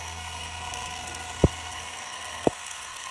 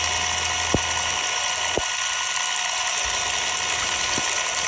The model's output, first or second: first